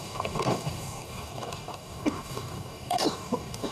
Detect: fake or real fake